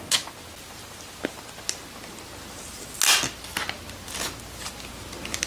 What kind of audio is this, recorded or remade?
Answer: recorded